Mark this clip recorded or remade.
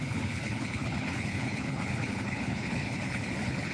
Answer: remade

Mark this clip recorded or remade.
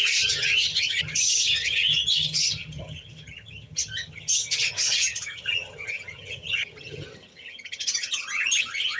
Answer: remade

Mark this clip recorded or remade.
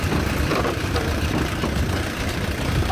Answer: remade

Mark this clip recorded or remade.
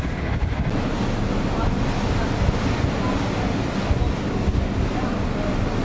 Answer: recorded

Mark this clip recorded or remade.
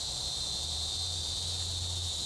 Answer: recorded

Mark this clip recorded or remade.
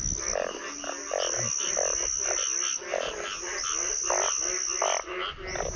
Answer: recorded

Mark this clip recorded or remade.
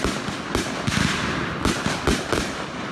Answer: recorded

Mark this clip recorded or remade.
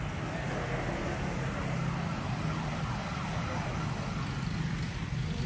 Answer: recorded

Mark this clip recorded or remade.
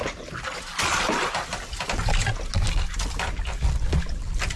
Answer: recorded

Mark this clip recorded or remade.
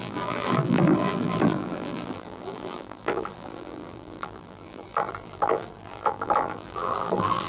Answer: remade